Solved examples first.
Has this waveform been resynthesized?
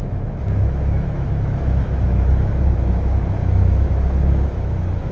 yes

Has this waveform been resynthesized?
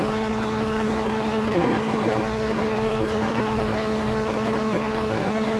yes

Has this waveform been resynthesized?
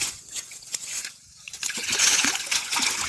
yes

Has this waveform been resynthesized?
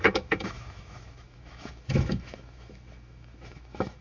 yes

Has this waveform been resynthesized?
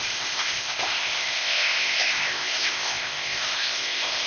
yes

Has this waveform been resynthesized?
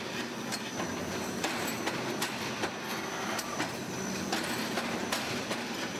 no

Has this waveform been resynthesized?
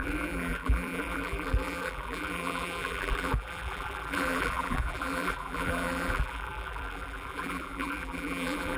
yes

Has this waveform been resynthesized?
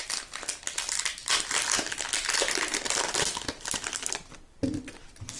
no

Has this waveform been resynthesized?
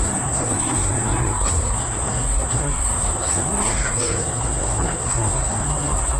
yes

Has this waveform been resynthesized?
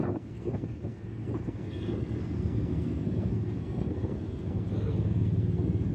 yes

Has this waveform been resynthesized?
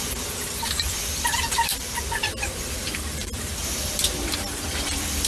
yes